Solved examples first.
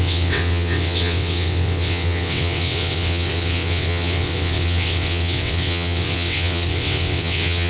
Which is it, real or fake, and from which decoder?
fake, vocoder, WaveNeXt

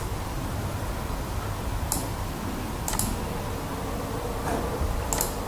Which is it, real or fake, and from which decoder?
real